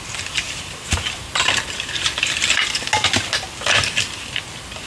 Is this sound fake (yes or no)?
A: no